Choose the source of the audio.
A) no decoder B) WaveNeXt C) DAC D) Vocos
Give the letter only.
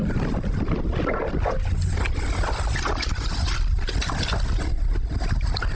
A